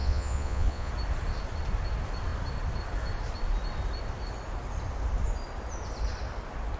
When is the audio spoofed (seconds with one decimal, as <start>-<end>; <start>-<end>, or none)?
0.0-0.9